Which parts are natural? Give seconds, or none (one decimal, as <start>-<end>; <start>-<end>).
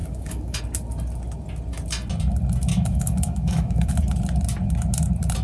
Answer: 0.6-2.7; 3.9-5.4